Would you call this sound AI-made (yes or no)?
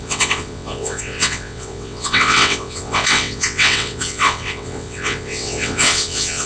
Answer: yes